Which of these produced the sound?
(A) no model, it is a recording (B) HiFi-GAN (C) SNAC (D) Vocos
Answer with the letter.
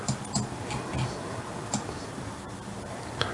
A